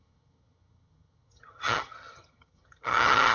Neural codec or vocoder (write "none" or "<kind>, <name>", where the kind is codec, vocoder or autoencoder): vocoder, HiFi-GAN